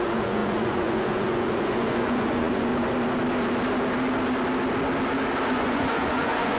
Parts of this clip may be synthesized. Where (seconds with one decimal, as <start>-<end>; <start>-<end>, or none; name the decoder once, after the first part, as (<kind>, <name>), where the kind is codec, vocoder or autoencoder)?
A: 0.0-2.7 (vocoder, Vocos); 5.5-6.6